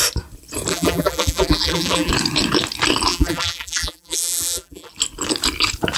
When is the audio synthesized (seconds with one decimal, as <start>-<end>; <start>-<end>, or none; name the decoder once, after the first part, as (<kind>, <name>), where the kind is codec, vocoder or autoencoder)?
0.7-2.1 (vocoder, BigVGAN v2); 3.1-4.9

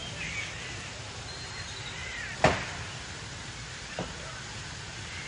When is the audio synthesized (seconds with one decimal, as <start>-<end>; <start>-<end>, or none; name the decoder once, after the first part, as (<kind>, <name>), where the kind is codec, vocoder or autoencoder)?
none

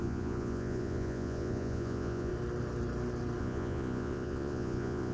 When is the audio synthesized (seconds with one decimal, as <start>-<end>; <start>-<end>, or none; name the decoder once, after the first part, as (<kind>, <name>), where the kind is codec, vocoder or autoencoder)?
0.0-2.3 (vocoder, Vocos); 3.4-5.1

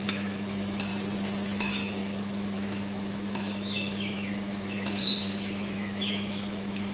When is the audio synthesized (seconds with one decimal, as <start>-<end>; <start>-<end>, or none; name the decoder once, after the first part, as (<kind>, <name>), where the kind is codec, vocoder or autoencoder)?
0.0-0.9 (autoencoder, DAC-VAE); 1.6-6.9

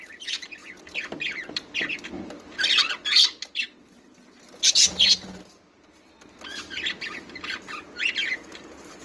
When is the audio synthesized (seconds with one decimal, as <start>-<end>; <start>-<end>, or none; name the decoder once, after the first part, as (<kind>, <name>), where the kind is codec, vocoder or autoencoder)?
none

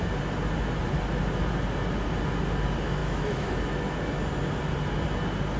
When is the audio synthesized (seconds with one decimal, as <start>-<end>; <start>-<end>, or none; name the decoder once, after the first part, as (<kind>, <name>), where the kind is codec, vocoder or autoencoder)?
3.0-3.5 (autoencoder, DAC-VAE)

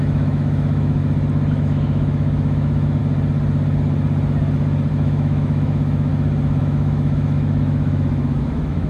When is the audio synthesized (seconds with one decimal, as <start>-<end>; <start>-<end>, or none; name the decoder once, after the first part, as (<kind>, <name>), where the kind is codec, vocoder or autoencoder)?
0.0-1.0 (autoencoder, DAC-VAE); 1.5-3.0; 4.9-6.1; 6.6-8.9